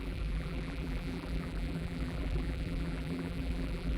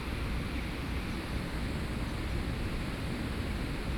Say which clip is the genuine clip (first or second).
second